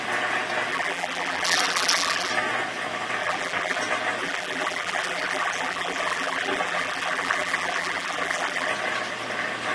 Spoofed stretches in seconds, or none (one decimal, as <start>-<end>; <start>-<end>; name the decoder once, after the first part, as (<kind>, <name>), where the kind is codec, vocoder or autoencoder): 0.7-2.3 (vocoder, BigVGAN v2); 3.2-3.8; 4.2-8.7